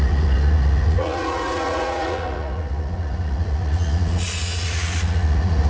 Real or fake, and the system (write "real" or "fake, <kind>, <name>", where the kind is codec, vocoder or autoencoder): fake, vocoder, Vocos